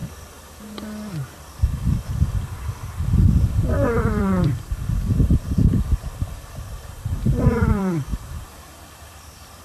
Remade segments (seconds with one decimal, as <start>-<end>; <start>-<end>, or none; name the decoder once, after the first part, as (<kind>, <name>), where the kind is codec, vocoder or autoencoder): 4.0-8.1 (vocoder, BigVGAN v2)